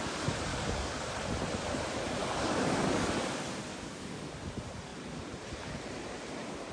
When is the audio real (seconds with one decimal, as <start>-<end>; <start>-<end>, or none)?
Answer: 0.0-0.5; 1.1-2.2; 3.1-3.7; 4.2-6.7